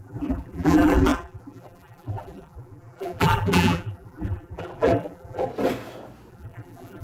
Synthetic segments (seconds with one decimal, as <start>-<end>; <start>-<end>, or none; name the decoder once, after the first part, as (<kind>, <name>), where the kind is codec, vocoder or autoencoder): 0.0-5.5 (vocoder, BigVGAN v2); 6.3-7.0